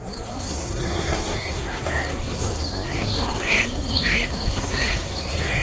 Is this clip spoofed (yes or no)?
yes